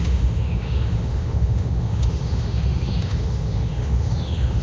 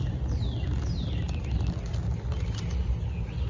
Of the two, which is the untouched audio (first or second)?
second